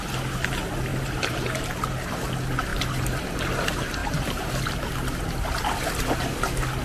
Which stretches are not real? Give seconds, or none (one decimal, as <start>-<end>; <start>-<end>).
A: 0.9-1.7; 2.7-3.2; 4.0-4.5